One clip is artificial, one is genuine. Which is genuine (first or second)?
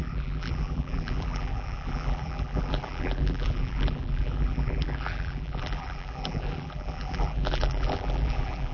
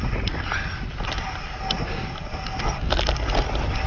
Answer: second